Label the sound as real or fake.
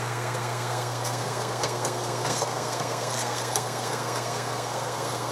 fake